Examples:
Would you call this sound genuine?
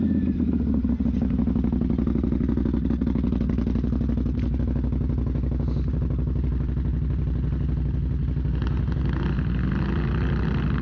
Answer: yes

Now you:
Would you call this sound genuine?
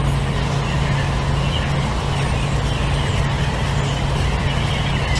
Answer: yes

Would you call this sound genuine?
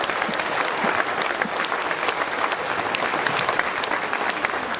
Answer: no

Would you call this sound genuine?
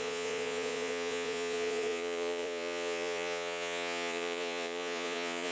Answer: no